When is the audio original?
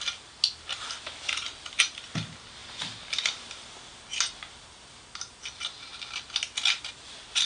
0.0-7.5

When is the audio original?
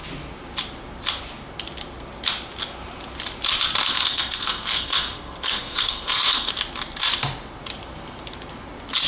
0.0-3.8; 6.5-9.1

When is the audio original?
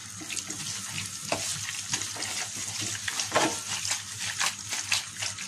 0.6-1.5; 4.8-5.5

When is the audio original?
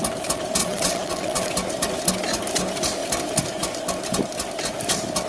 0.0-0.6; 1.5-5.3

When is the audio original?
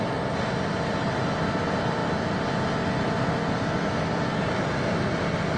0.0-5.6